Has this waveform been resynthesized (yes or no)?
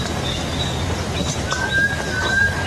no